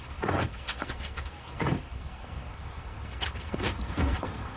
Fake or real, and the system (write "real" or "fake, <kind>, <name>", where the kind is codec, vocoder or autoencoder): fake, codec, SNAC